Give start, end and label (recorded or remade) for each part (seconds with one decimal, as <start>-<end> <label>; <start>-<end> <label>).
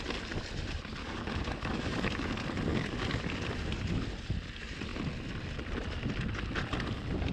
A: 0.0-1.0 recorded; 1.0-2.3 remade; 2.3-2.7 recorded; 2.7-3.4 remade; 3.4-7.3 recorded